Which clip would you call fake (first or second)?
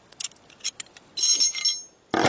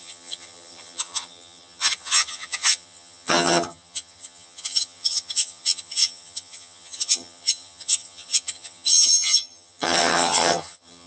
second